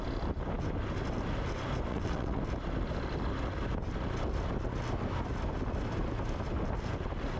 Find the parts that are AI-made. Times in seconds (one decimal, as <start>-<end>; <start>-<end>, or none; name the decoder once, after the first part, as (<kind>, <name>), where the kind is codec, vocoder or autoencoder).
1.9-2.4 (vocoder, WaveNeXt)